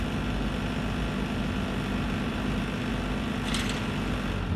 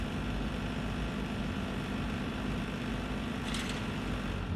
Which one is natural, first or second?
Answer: first